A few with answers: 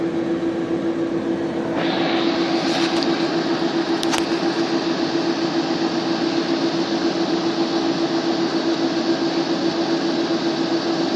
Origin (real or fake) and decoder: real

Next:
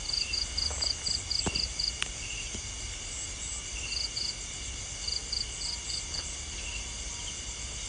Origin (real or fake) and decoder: real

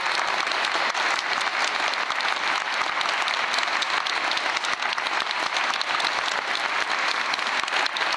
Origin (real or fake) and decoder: real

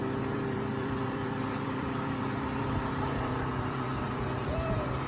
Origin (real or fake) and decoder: fake, vocoder, BigVGAN v2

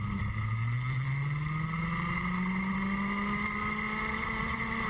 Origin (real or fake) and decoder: real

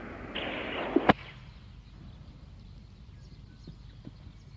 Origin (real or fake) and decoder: real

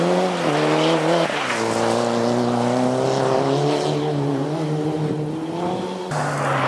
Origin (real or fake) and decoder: real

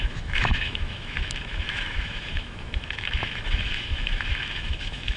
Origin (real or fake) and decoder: fake, autoencoder, DAC-VAE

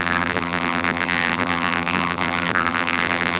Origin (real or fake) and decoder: fake, vocoder, BigVGAN v2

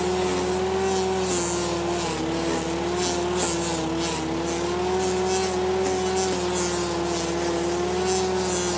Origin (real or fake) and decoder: real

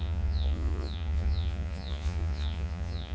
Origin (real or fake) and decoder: fake, vocoder, Vocos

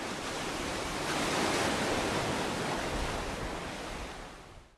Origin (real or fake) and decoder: real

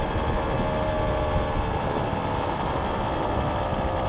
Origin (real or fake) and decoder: real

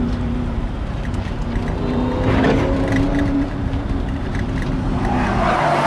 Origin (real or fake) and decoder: fake, vocoder, BigVGAN v2